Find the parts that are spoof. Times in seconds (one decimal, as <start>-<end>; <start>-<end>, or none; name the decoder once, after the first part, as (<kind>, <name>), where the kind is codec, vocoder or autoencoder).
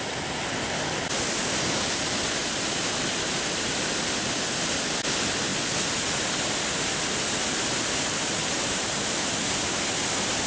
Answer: 2.4-3.8 (vocoder, BigVGAN v2); 8.4-9.0